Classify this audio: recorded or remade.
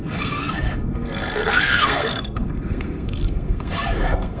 remade